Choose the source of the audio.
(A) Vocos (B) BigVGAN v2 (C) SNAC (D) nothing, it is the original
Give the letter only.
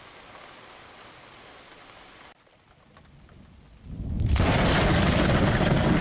D